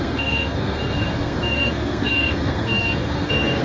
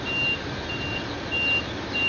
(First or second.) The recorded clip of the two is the second